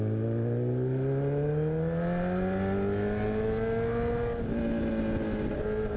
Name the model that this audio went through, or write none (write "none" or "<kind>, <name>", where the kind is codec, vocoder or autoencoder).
none